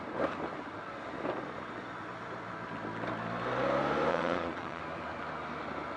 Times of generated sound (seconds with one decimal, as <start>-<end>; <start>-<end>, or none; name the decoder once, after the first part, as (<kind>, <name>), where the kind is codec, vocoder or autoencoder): 4.1-4.8 (vocoder, Vocos)

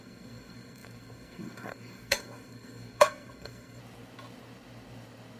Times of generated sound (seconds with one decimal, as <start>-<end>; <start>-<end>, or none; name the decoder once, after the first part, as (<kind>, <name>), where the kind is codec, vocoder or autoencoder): 0.0-3.8 (codec, SNAC)

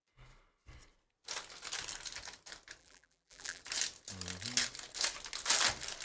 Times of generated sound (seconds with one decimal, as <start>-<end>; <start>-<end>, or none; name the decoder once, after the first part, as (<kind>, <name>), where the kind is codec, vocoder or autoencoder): 2.8-3.6 (vocoder, BigVGAN v2)